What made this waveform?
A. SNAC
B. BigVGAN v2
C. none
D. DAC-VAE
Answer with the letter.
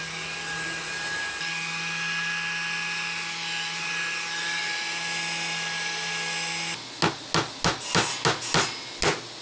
C